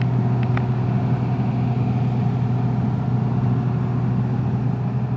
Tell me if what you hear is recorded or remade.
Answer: recorded